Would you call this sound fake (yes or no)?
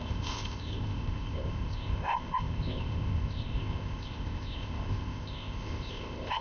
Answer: yes